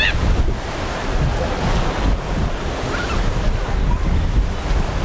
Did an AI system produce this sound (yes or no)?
no